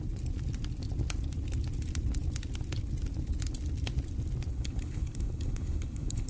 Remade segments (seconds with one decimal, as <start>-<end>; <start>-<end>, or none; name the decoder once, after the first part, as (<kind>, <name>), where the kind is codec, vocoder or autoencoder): 4.5-6.3 (codec, HILCodec)